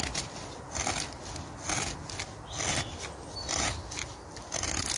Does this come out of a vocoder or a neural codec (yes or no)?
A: no